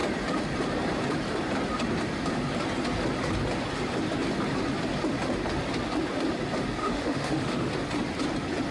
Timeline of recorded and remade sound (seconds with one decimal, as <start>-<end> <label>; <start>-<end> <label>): 0.0-6.8 recorded; 6.8-7.7 remade; 7.7-8.7 recorded